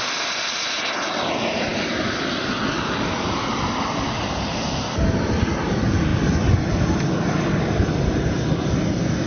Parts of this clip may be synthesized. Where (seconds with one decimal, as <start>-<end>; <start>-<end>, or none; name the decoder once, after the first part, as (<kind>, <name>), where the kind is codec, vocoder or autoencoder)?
none